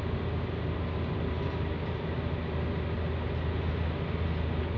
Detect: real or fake real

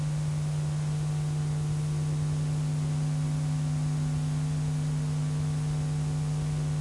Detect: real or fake real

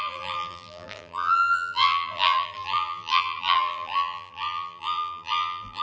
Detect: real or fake fake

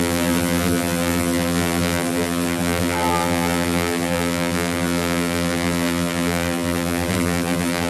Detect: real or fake fake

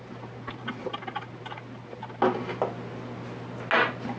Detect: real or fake real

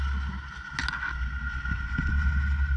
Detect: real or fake real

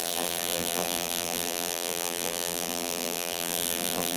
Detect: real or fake fake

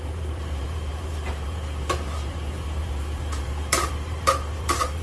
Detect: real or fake fake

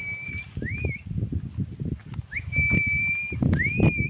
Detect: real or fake real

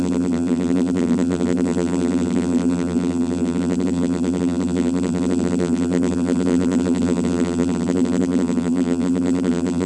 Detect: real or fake fake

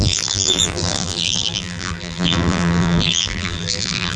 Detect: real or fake fake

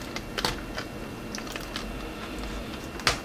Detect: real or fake real